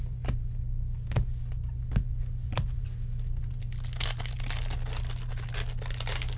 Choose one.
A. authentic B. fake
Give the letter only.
A